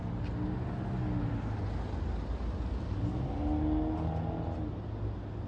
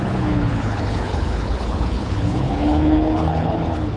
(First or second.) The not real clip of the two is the second